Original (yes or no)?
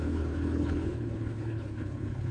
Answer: no